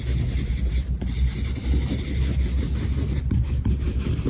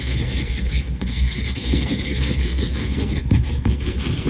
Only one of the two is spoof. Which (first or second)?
second